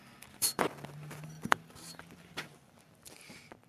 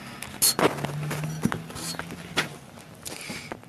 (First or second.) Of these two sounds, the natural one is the second